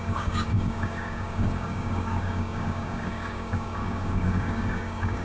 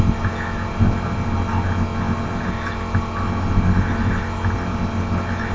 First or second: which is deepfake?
first